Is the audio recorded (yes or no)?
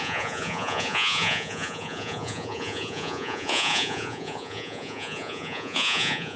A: no